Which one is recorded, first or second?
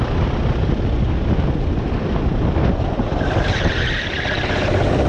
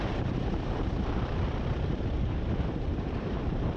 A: first